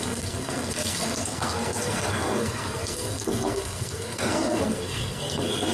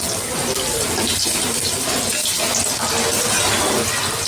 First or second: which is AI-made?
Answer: first